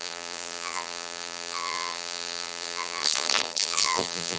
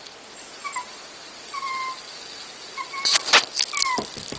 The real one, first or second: second